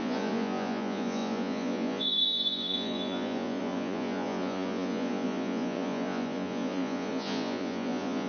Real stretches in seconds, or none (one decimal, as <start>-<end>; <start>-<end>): none